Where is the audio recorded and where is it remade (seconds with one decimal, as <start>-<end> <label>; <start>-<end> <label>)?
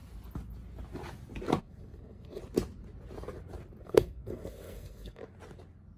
0.0-1.6 recorded; 1.6-2.4 remade; 2.4-3.8 recorded; 3.8-5.2 remade; 5.2-6.0 recorded